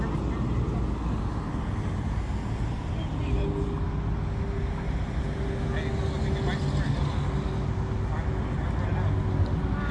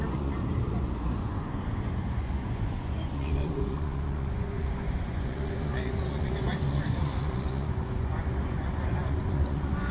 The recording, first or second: first